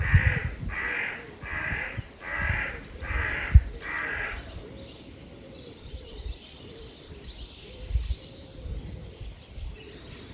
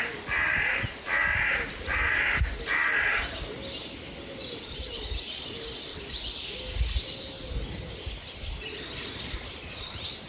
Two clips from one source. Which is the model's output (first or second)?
first